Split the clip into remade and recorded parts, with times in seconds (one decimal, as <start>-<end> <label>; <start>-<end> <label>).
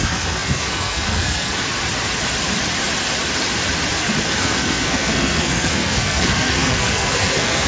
0.0-1.6 remade; 1.6-4.2 recorded; 4.2-7.7 remade